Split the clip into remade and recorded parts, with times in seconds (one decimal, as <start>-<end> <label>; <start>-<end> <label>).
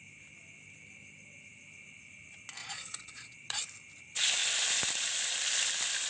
0.0-2.6 recorded; 2.6-3.6 remade; 3.6-6.1 recorded